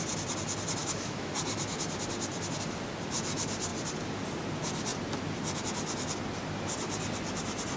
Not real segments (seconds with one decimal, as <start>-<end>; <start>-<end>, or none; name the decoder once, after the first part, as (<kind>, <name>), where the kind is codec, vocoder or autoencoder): 0.8-1.3 (autoencoder, DAC-VAE)